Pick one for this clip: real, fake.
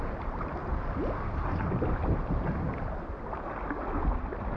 real